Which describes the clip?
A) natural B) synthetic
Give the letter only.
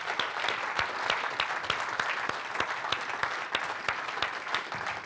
A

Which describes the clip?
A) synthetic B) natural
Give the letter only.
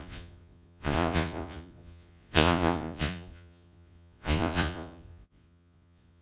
A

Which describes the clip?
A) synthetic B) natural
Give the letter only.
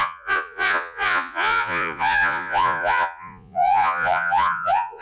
A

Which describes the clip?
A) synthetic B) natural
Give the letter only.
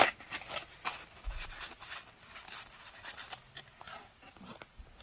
B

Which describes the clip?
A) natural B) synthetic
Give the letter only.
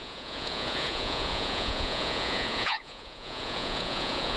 B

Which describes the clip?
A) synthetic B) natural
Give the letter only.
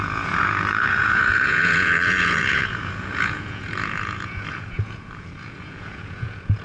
A